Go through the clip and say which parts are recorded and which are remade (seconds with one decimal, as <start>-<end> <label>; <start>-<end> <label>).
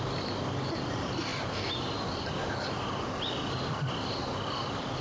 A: 0.0-5.0 recorded